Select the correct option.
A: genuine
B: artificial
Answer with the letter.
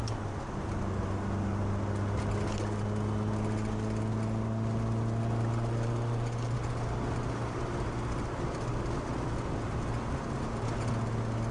A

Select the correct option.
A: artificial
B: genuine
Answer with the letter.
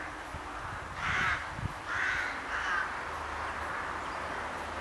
B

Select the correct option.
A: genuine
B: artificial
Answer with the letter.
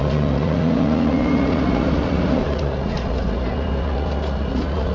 B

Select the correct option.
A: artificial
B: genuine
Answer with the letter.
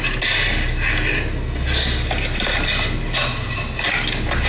B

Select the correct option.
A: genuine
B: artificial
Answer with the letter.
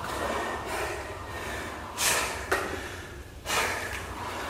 A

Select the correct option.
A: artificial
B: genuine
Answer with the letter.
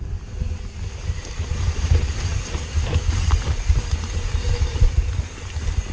B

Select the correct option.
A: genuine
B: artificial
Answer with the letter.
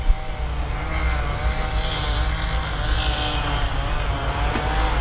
A